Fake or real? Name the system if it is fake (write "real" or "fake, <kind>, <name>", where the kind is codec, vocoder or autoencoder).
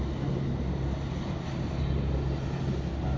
real